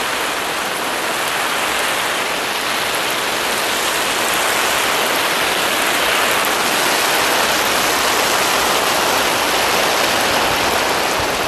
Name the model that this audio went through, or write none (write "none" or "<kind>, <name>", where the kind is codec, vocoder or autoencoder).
none